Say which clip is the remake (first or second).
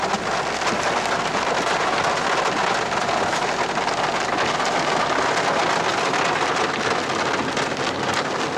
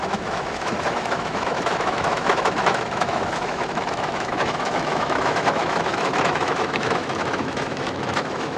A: second